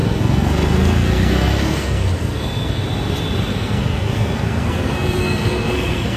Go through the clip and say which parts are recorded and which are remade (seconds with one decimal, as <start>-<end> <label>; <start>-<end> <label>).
0.0-2.8 remade; 2.8-3.5 recorded; 3.5-6.2 remade